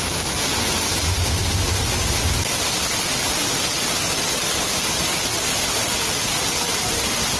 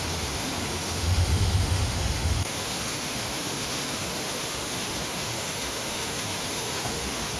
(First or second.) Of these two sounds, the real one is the first